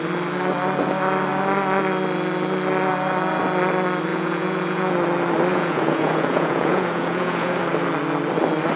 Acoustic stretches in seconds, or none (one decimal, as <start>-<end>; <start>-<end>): 0.0-4.1; 4.9-5.5; 7.6-8.8